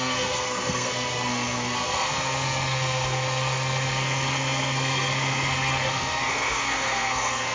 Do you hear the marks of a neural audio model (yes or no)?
yes